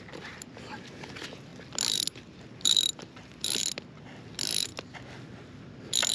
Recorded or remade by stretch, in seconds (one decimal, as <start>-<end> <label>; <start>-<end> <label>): 0.0-6.1 recorded